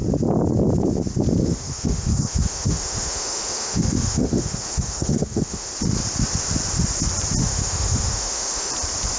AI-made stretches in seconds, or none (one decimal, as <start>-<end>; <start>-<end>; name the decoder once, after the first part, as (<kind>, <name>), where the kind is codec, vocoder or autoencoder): 1.4-5.7 (autoencoder, DAC-VAE); 7.4-8.7